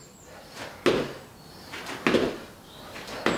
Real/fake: real